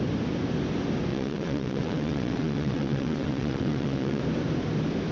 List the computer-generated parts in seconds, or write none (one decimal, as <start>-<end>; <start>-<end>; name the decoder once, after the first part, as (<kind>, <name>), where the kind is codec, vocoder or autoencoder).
1.1-4.2 (vocoder, WaveNeXt)